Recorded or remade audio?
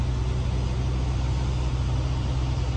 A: recorded